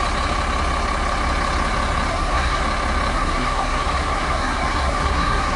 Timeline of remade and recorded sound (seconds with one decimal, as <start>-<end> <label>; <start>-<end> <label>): 0.0-2.1 recorded; 2.1-2.6 remade; 2.6-3.1 recorded; 3.1-5.6 remade